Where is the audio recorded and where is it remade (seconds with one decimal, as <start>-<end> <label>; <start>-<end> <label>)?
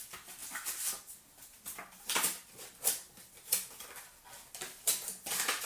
0.0-5.7 recorded